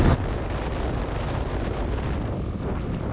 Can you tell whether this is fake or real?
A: real